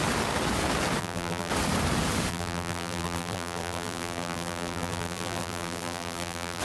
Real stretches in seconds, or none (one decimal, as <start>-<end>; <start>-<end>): 0.0-1.0; 1.5-2.3